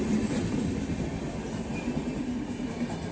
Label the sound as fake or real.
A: real